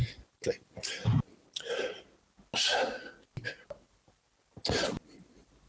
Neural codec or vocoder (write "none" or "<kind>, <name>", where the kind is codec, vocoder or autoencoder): none